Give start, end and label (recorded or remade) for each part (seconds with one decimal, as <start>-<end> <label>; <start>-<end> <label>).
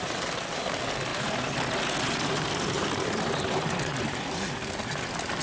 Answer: 0.0-1.1 recorded; 1.1-4.3 remade; 4.3-5.4 recorded